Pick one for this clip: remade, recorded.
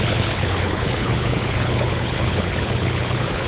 remade